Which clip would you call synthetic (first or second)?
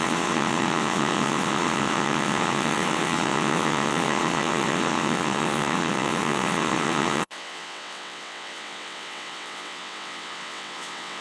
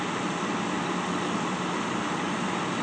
first